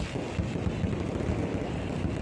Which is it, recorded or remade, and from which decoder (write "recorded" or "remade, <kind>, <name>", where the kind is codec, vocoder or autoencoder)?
recorded